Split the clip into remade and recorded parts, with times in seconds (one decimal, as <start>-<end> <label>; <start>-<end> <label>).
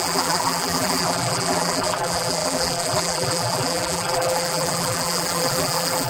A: 0.0-6.1 remade